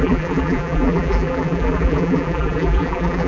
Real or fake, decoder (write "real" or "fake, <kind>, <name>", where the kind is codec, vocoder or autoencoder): fake, vocoder, BigVGAN v2